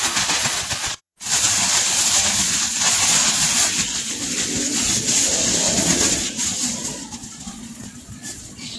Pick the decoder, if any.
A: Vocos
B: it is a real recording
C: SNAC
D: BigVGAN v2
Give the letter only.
A